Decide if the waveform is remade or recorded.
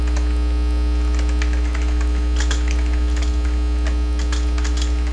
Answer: recorded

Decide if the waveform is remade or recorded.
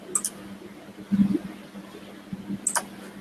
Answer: recorded